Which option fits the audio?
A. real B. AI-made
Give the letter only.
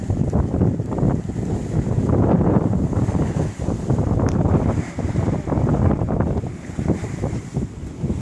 B